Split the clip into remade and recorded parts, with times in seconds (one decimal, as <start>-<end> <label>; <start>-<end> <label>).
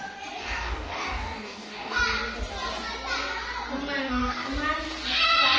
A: 0.0-0.4 recorded; 0.4-2.0 remade; 2.0-4.0 recorded; 4.0-4.5 remade; 4.5-5.6 recorded